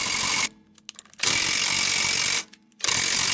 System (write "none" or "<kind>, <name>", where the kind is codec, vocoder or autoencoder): none